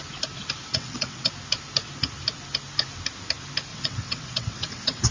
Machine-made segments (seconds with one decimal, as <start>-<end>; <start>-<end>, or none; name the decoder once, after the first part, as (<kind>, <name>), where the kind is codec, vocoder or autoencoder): 0.7-1.3 (vocoder, WaveNeXt); 3.7-5.1